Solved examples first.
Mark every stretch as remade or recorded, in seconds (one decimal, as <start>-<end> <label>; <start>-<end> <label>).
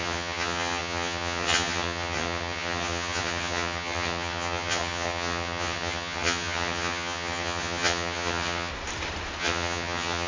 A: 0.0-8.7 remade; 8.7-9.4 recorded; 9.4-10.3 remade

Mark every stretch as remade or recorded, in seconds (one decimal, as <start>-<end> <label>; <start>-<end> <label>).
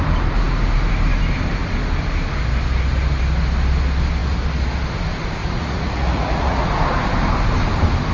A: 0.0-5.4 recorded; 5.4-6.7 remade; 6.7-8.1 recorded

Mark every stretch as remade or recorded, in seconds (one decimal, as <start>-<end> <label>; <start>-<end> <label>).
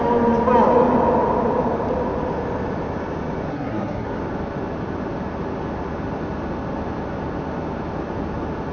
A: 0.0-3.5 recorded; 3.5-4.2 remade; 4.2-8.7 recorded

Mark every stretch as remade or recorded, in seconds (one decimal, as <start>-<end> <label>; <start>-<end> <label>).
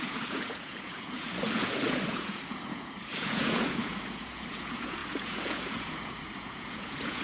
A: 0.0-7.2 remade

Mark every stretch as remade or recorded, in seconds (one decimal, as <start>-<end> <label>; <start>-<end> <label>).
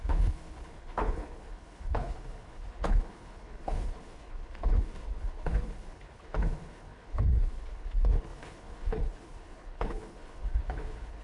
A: 0.0-11.2 remade